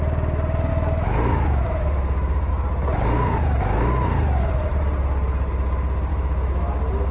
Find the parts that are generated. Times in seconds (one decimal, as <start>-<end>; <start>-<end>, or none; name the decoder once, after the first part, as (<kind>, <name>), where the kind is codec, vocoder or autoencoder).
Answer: 0.7-2.5 (autoencoder, DAC-VAE); 6.1-7.1